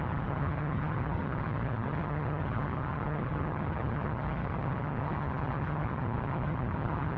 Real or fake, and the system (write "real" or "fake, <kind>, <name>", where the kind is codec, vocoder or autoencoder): fake, vocoder, HiFi-GAN